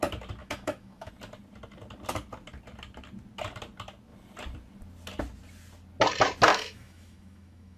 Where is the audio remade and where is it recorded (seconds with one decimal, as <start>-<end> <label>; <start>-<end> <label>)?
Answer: 0.0-0.4 recorded; 0.4-1.1 remade; 1.1-6.5 recorded; 6.5-7.8 remade